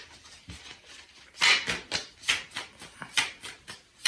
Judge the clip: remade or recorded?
recorded